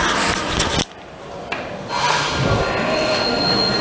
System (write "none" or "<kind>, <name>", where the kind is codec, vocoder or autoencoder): none